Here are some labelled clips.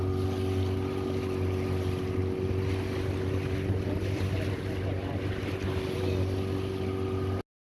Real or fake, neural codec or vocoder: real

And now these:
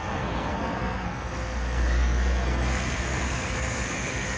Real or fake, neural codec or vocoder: fake, codec, SNAC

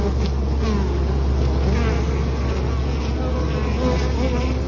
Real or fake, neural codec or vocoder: real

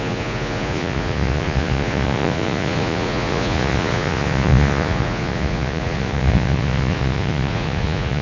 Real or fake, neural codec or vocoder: fake, vocoder, Vocos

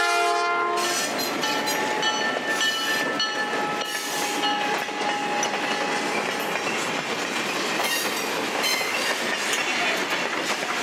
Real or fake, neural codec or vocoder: real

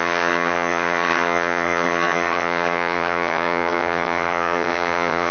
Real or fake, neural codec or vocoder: fake, vocoder, HiFi-GAN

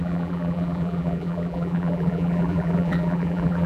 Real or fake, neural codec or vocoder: fake, vocoder, BigVGAN v2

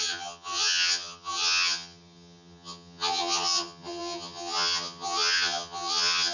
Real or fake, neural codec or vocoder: fake, vocoder, HiFi-GAN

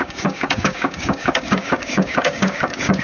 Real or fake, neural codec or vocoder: fake, codec, DAC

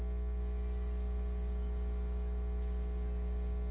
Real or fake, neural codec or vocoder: real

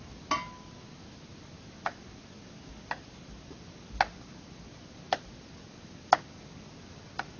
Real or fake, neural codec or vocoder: real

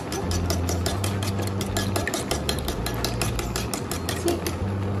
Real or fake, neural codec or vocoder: real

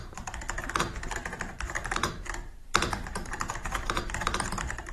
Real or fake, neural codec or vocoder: fake, vocoder, BigVGAN v2